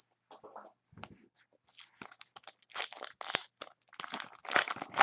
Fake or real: real